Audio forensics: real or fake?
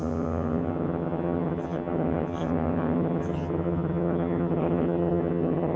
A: fake